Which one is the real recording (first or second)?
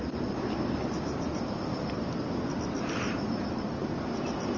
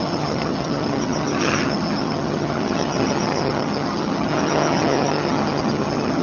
first